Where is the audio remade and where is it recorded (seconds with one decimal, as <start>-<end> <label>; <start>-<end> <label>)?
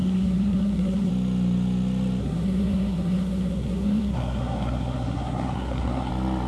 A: 0.0-1.1 remade; 1.1-2.2 recorded; 2.2-6.1 remade; 6.1-6.5 recorded